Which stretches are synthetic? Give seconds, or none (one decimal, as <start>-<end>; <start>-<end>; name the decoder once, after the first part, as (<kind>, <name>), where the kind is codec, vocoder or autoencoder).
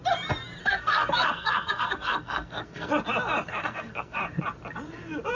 0.6-2.9 (codec, SNAC); 3.5-4.2